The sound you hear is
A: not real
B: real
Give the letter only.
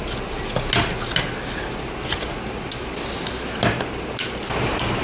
B